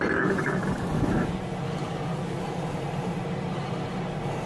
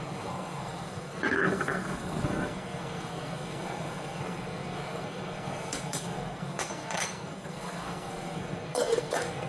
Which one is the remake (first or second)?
second